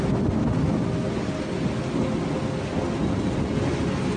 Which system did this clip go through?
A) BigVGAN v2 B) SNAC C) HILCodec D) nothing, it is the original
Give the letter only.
D